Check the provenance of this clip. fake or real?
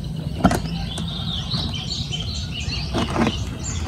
real